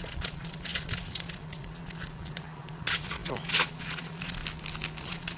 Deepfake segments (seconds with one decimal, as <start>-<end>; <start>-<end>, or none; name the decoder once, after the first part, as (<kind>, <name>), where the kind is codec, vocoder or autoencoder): 0.0-4.4 (vocoder, Vocos); 5.0-5.4